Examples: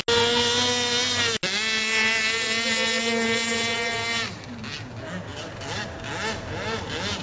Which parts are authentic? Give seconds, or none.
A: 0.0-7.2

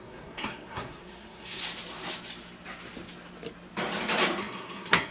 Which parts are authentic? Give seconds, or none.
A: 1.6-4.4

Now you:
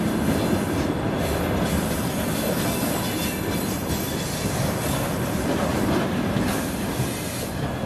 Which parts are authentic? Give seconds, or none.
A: 0.0-5.7; 6.4-7.9

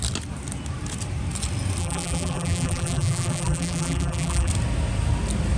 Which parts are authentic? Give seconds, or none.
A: 0.0-1.8; 4.5-5.6